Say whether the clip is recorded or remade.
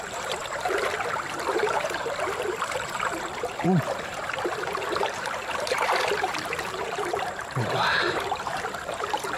remade